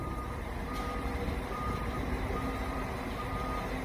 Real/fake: fake